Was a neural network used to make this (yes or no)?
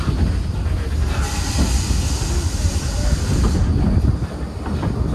no